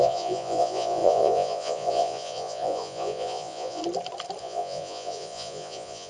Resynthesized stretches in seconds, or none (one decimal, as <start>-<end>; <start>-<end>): 0.0-3.8; 4.4-6.1